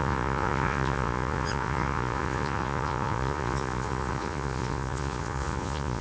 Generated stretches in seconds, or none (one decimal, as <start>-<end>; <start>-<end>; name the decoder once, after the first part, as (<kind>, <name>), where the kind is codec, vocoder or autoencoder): 0.0-6.0 (vocoder, Vocos)